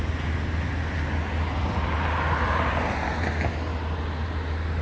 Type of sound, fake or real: real